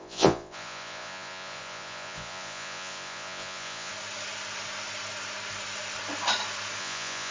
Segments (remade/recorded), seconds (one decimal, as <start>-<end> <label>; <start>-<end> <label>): 0.0-3.9 remade; 3.9-6.8 recorded; 6.8-7.3 remade